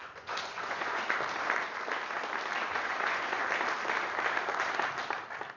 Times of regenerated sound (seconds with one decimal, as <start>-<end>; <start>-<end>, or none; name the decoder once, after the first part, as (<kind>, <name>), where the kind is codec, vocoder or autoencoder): 0.0-1.0 (vocoder, Vocos); 2.6-3.4